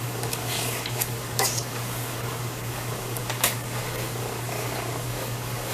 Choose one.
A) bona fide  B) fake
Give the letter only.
B